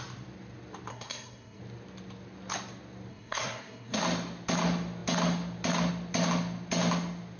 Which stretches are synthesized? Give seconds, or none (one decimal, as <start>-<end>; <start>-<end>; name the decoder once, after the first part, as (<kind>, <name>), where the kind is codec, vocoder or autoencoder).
0.9-1.6 (codec, SNAC); 3.1-4.0